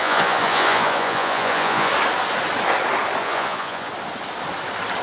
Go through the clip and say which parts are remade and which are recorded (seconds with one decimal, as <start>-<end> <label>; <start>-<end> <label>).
0.0-1.9 remade; 1.9-3.2 recorded; 3.2-3.9 remade; 3.9-5.0 recorded